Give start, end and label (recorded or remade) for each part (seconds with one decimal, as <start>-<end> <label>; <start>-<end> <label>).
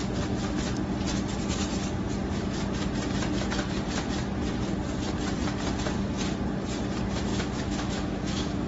0.0-7.3 recorded; 7.3-8.7 remade